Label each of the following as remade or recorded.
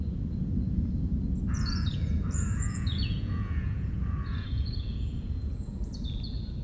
remade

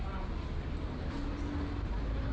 recorded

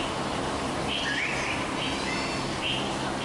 recorded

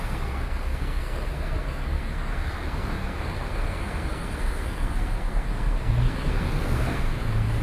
remade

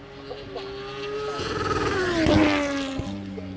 recorded